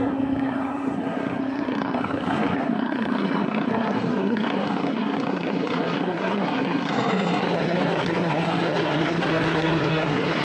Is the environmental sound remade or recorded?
remade